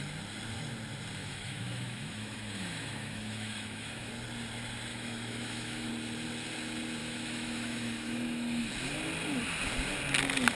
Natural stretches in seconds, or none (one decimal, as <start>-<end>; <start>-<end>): 0.0-1.2; 4.1-4.9; 5.9-7.0; 8.7-10.5